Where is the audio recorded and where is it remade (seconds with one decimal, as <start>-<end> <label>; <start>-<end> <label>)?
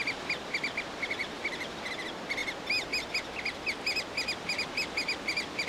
0.0-2.4 remade; 2.4-5.2 recorded; 5.2-5.7 remade